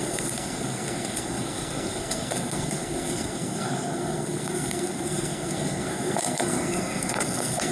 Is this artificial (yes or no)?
yes